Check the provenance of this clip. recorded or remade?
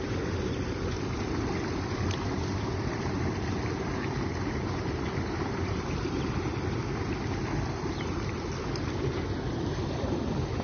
remade